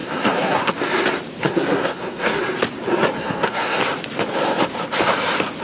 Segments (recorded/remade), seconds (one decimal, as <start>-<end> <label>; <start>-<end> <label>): 0.0-0.7 remade; 0.7-1.4 recorded; 1.4-2.4 remade; 2.4-3.2 recorded; 3.2-3.8 remade; 3.8-5.6 recorded